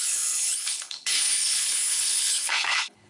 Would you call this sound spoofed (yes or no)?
yes